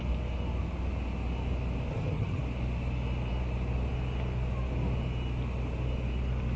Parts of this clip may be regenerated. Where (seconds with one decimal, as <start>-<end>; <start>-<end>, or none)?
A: 1.9-2.4